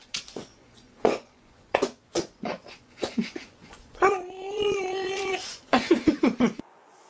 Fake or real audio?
fake